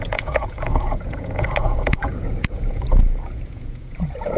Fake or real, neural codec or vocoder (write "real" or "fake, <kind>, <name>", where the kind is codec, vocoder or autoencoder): fake, vocoder, Vocos